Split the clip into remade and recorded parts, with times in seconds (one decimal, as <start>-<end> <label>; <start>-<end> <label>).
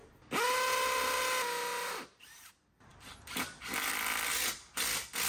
0.0-1.7 recorded; 1.7-2.5 remade; 2.5-5.3 recorded